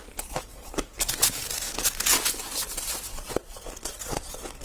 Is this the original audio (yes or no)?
yes